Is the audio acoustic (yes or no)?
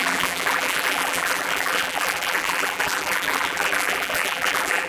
no